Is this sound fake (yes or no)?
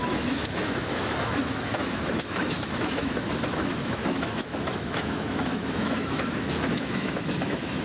yes